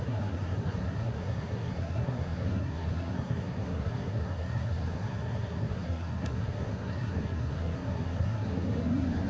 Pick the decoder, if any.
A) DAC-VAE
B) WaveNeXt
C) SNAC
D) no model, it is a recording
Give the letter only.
C